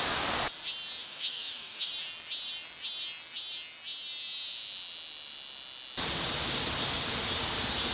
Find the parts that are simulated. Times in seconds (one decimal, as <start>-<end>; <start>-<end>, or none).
1.0-1.9